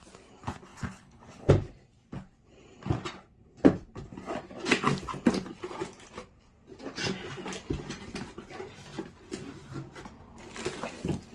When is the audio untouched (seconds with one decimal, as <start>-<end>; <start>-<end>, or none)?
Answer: 0.0-0.7; 1.5-11.3